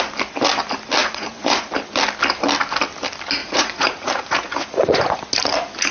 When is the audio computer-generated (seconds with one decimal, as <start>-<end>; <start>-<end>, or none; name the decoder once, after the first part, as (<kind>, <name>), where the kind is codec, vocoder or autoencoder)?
1.0-1.7 (vocoder, Vocos); 3.4-5.2